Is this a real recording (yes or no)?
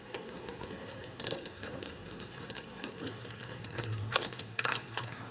no